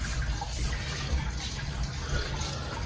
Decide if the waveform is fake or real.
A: real